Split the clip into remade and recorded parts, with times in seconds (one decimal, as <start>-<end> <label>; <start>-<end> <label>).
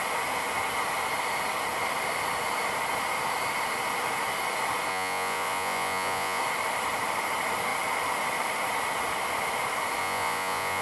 0.0-4.9 recorded; 4.9-6.4 remade; 6.4-10.0 recorded; 10.0-10.8 remade